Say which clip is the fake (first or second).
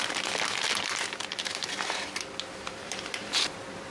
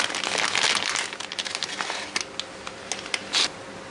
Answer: first